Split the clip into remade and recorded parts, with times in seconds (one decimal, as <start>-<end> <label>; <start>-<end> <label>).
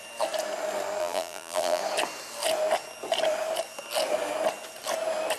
0.0-1.0 recorded; 1.0-1.8 remade; 1.8-5.4 recorded